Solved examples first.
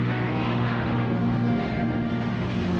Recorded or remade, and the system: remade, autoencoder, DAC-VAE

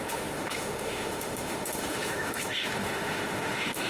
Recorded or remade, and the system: remade, autoencoder, DAC-VAE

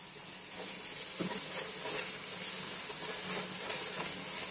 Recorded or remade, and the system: recorded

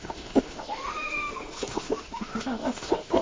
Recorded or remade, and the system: remade, autoencoder, DAC-VAE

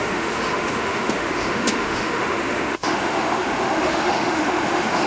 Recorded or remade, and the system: remade, autoencoder, DAC-VAE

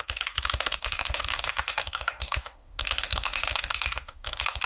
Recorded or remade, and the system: remade, autoencoder, DAC-VAE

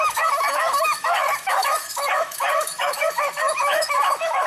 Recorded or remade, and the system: remade, autoencoder, DAC-VAE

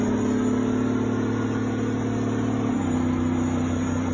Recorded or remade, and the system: recorded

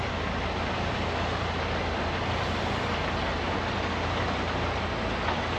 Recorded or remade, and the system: recorded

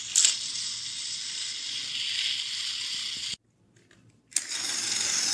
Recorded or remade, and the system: recorded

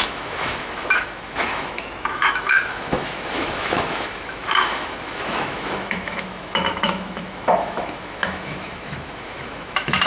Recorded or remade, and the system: remade, autoencoder, DAC-VAE